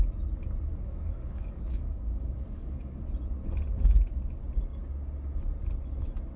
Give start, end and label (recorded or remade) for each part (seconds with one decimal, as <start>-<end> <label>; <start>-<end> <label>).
0.0-0.7 recorded; 0.7-3.0 remade; 3.0-6.4 recorded